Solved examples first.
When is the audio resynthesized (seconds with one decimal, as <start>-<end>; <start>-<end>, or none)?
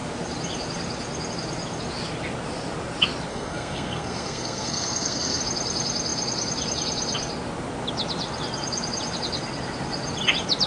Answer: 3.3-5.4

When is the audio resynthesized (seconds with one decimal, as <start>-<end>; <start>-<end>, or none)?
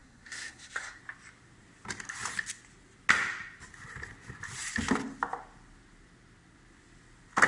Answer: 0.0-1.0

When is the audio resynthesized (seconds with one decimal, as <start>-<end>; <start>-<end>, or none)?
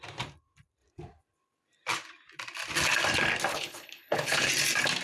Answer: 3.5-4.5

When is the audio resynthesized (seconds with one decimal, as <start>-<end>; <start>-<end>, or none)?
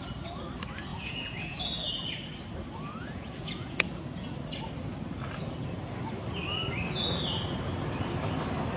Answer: 0.9-1.6; 3.0-4.3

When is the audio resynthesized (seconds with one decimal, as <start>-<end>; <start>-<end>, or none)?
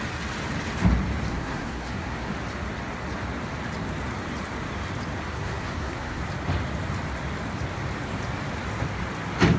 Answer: 1.3-2.3; 5.3-6.2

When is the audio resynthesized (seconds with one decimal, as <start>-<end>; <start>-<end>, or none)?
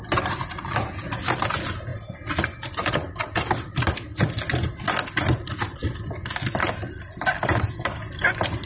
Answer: none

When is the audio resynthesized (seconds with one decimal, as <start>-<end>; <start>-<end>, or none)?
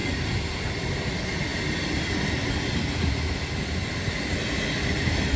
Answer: none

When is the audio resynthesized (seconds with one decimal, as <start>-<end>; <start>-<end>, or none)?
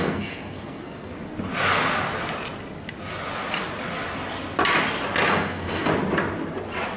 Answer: 0.0-1.1; 5.3-5.9